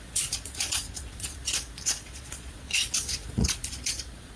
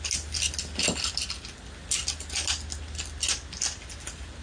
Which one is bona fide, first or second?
second